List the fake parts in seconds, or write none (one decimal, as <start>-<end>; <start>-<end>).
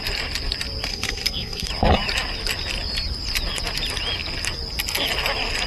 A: 0.9-1.7